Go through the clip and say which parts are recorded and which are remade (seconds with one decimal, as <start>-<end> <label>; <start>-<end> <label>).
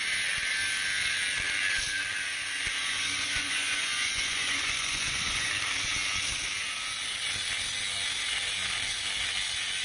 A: 0.0-2.8 recorded; 2.8-5.5 remade; 5.5-9.8 recorded